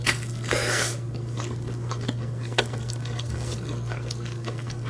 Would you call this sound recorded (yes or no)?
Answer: no